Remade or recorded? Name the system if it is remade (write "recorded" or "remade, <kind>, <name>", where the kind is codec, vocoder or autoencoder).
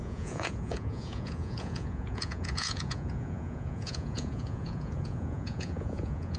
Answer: remade, vocoder, Vocos